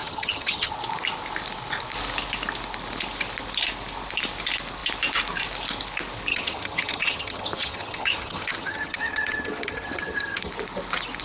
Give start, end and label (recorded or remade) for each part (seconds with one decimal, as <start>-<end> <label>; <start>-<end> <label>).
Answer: 0.0-0.7 remade; 0.7-6.3 recorded; 6.3-10.5 remade; 10.5-11.2 recorded